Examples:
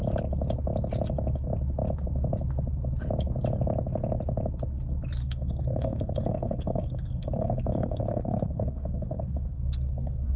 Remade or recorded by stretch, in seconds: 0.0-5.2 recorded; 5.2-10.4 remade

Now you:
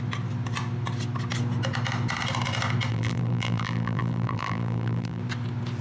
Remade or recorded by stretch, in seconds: 0.0-2.9 recorded; 2.9-5.2 remade; 5.2-5.8 recorded

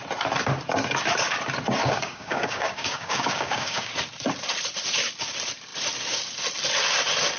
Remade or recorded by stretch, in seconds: 0.0-1.8 recorded; 1.8-3.9 remade; 3.9-7.4 recorded

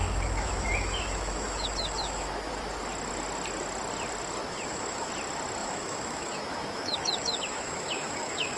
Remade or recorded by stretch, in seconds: 0.0-2.5 remade; 2.5-4.4 recorded; 4.4-5.1 remade; 5.1-5.6 recorded; 5.6-8.6 remade

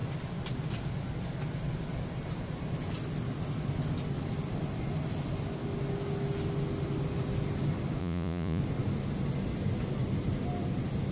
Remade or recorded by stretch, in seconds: 0.0-8.0 recorded; 8.0-8.6 remade; 8.6-11.1 recorded

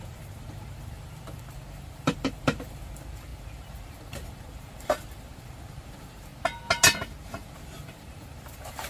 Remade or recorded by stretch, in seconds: 0.0-6.3 remade; 6.3-7.2 recorded; 7.2-8.9 remade

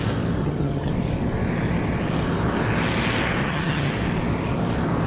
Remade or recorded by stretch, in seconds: 0.0-0.4 recorded; 0.4-0.9 remade; 0.9-3.4 recorded; 3.4-3.9 remade; 3.9-5.1 recorded